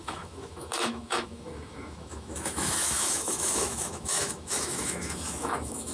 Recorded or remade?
remade